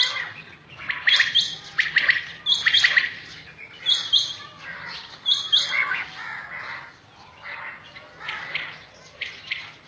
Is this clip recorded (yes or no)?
yes